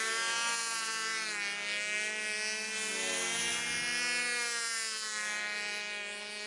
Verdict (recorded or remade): recorded